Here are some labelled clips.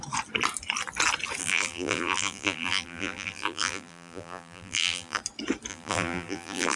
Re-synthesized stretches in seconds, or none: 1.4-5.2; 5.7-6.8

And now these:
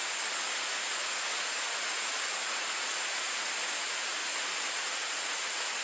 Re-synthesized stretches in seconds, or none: 0.8-3.7; 4.2-5.8

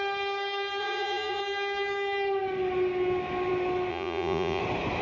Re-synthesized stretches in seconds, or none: 0.8-1.4; 3.9-4.6